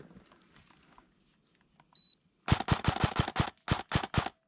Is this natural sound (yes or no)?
yes